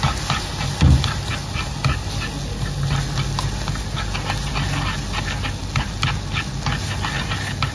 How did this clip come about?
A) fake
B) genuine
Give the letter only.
B